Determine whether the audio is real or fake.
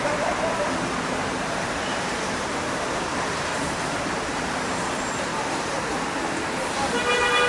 fake